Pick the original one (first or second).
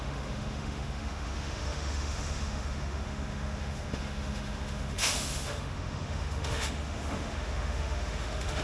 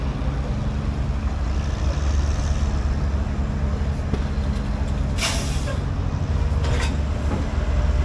second